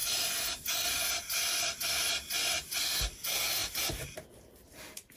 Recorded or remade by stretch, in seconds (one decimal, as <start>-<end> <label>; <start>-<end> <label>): 0.0-3.6 recorded; 3.6-5.2 remade